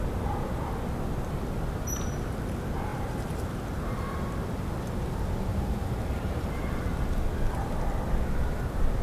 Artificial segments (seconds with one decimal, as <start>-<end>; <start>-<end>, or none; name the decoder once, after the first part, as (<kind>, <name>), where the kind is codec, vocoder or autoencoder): 5.5-6.8 (vocoder, BigVGAN v2)